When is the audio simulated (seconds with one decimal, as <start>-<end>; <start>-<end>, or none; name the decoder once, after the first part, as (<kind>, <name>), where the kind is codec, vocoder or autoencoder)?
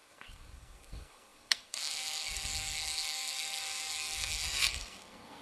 0.0-5.4 (codec, SNAC)